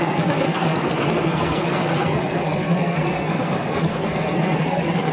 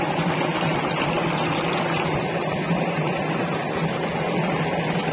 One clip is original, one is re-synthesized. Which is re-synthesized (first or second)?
first